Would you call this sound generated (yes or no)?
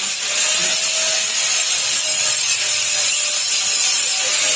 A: no